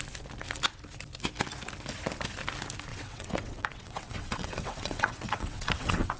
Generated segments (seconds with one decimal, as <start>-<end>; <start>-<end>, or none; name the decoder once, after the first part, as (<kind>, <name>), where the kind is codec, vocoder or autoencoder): 2.9-6.2 (vocoder, WaveNeXt)